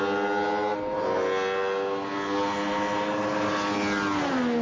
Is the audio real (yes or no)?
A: yes